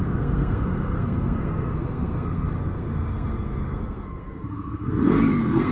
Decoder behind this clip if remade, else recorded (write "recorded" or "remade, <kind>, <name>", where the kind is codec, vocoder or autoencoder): remade, codec, SNAC